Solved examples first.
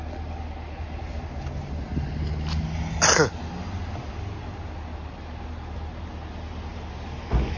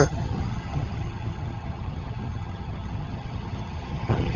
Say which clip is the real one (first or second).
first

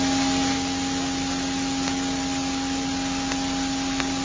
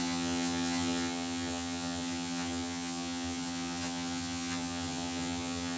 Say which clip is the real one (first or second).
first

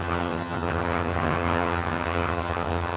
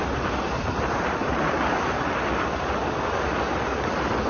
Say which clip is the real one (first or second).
second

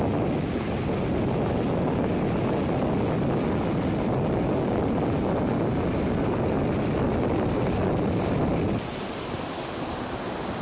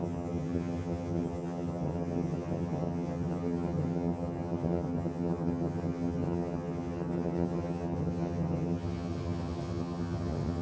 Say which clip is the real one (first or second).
first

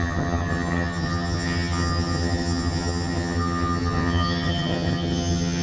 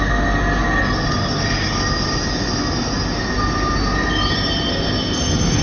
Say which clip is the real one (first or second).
second